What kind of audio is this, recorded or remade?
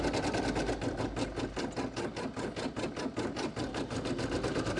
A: recorded